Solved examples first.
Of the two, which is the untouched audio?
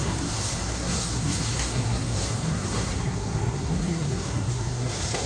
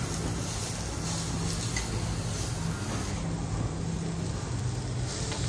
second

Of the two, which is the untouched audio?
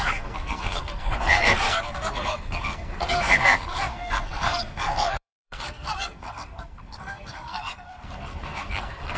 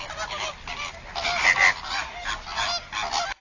second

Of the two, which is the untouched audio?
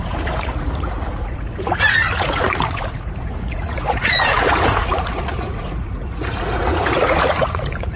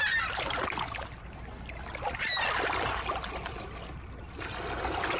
second